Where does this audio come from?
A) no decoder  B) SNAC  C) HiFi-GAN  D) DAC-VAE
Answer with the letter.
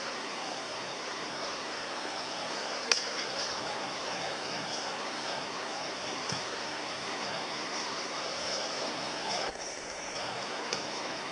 B